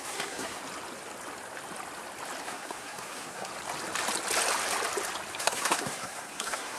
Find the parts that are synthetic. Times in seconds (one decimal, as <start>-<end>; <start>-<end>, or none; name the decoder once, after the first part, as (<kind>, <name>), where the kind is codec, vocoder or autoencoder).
0.0-0.6 (codec, SNAC); 2.4-3.5; 5.4-6.8